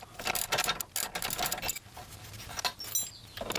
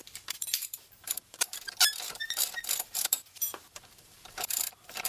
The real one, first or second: first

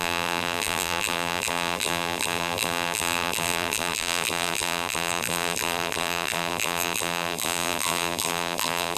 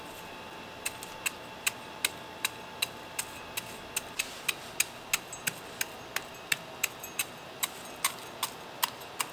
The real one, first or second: second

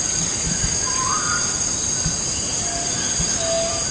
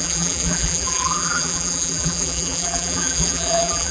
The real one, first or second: first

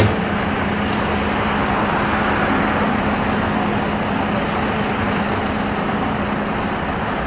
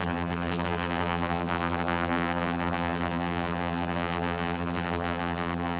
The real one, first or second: first